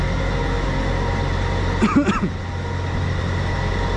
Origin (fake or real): real